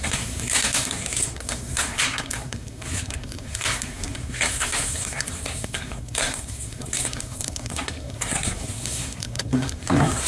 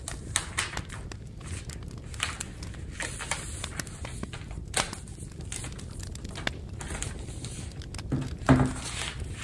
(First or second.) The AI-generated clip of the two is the first